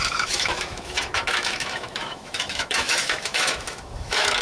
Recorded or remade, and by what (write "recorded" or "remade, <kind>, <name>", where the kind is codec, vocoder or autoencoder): remade, autoencoder, DAC-VAE